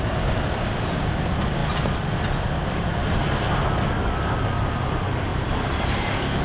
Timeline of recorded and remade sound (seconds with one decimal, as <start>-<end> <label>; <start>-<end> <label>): 0.0-6.4 recorded